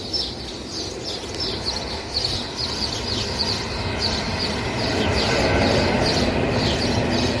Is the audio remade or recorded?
recorded